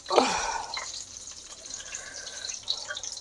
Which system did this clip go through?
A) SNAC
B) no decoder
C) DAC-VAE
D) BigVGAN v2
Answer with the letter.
D